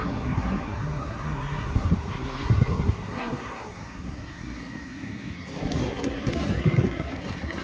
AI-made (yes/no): yes